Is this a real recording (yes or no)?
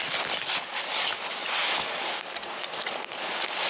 yes